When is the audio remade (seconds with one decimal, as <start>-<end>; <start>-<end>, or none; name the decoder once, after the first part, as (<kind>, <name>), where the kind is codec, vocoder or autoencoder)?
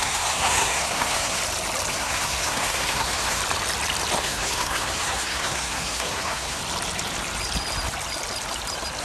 0.0-1.4 (codec, SNAC); 1.9-3.4; 4.2-6.6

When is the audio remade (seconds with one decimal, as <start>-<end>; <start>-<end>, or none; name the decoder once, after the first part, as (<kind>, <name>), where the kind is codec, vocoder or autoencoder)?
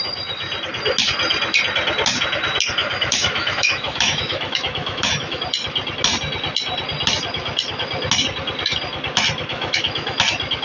2.8-5.4 (autoencoder, DAC-VAE); 9.5-10.2